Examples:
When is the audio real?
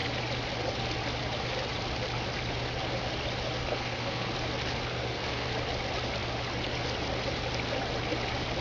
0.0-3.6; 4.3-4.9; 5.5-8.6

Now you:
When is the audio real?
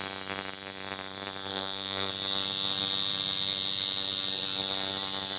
0.0-1.5; 2.1-5.4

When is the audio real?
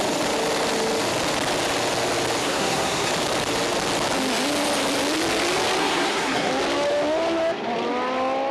0.0-2.4; 3.1-5.8; 6.5-8.5